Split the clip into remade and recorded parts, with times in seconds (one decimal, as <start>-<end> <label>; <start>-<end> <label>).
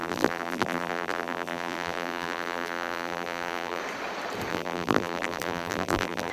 0.0-3.8 remade; 3.8-4.5 recorded; 4.5-6.3 remade